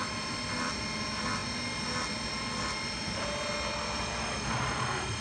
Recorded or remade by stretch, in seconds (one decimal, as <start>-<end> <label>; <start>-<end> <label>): 0.0-5.2 recorded